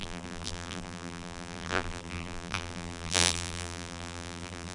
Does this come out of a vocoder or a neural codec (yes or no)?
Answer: yes